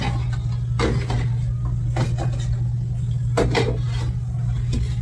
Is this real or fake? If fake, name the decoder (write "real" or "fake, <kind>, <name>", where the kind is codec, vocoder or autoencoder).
real